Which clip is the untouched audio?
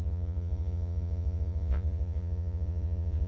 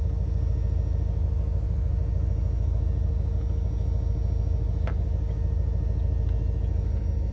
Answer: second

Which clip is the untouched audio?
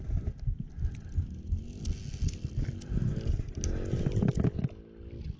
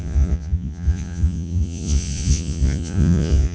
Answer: first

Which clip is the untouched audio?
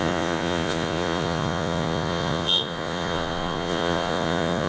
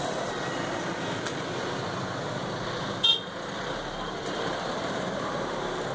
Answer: second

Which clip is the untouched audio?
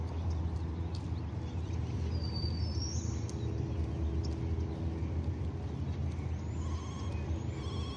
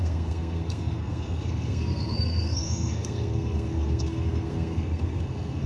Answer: first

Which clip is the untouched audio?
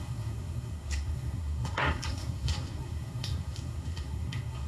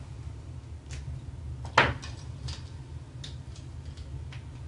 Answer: second